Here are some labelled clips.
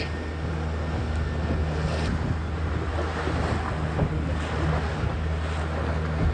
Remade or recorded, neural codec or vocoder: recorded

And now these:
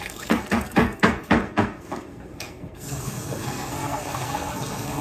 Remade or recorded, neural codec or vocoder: remade, codec, SNAC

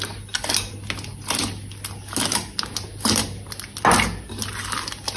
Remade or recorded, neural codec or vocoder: recorded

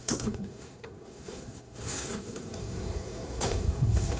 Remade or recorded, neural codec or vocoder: remade, codec, SNAC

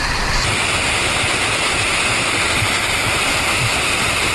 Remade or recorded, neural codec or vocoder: recorded